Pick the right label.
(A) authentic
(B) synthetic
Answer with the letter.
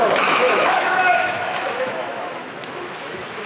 B